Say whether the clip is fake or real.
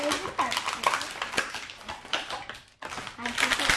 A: real